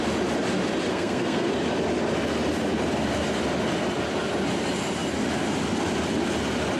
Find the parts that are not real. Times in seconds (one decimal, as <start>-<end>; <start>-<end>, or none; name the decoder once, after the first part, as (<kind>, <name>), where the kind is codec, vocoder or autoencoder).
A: 0.9-1.5 (codec, SNAC)